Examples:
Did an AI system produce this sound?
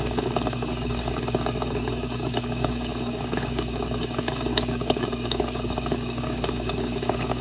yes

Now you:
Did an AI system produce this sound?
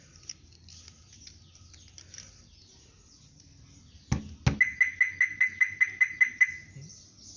no